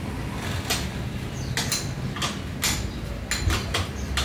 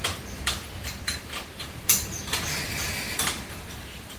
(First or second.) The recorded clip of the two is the first